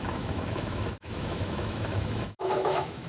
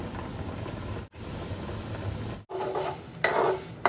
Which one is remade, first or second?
first